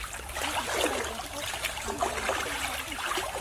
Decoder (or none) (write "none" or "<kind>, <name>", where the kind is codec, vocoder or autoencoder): none